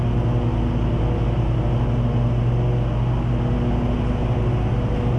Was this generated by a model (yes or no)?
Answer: no